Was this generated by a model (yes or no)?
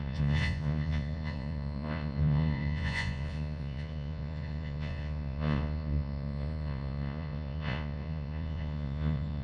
yes